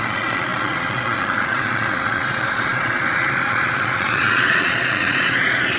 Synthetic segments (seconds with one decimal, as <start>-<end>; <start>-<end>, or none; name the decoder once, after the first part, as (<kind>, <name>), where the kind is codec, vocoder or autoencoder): 0.0-5.8 (vocoder, Vocos)